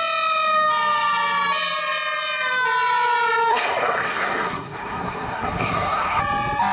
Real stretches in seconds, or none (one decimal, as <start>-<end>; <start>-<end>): 0.0-3.5; 6.2-6.7